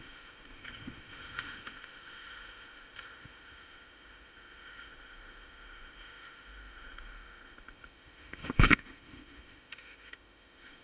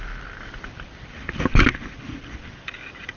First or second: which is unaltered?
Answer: second